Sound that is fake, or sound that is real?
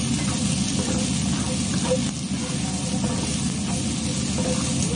real